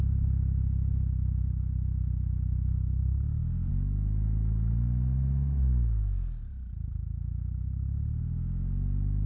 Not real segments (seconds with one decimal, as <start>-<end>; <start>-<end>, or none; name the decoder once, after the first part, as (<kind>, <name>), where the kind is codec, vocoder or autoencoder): 2.7-3.7 (codec, SNAC)